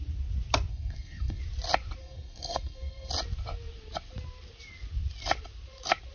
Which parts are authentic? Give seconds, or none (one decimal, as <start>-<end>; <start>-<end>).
0.0-0.7; 1.4-2.0; 3.1-6.1